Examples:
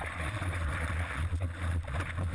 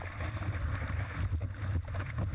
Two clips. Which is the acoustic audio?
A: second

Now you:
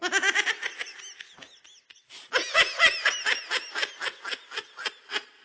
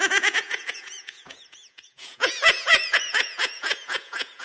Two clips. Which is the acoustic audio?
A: first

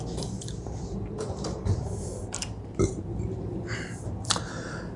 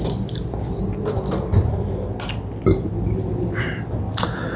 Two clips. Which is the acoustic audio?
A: second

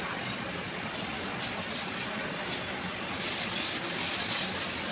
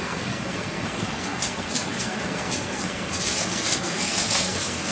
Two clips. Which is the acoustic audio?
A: first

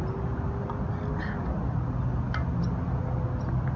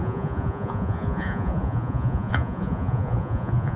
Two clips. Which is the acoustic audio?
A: first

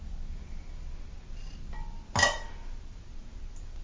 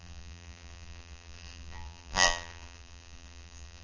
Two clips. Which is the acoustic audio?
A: first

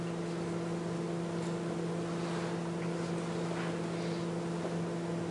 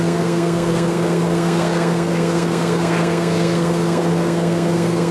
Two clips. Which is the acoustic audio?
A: first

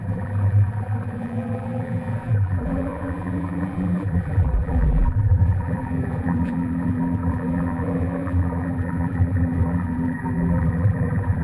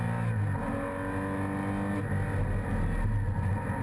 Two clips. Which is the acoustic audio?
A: second